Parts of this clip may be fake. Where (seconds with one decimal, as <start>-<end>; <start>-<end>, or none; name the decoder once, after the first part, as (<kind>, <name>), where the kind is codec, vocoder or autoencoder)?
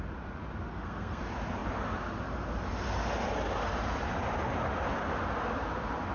0.7-1.2 (codec, SNAC)